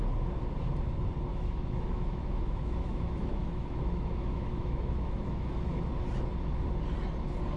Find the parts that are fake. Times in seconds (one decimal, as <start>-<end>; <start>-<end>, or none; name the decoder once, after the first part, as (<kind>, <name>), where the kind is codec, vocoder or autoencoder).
1.3-5.9 (autoencoder, DAC-VAE)